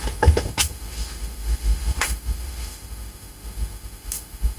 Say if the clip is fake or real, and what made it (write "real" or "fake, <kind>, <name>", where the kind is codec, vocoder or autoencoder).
fake, autoencoder, DAC-VAE